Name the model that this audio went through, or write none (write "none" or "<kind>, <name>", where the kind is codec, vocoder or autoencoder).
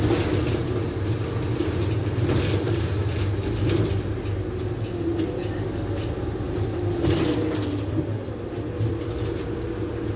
none